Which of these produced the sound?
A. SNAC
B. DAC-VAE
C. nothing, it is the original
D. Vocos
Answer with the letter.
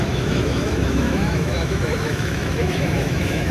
B